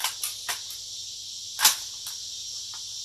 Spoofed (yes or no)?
no